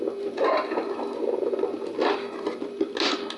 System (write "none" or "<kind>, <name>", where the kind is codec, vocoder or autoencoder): none